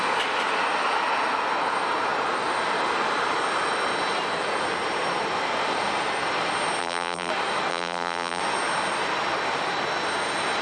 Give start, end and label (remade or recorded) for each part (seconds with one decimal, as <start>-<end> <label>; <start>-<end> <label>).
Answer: 0.0-6.8 recorded; 6.8-7.3 remade; 7.3-7.7 recorded; 7.7-8.4 remade; 8.4-10.6 recorded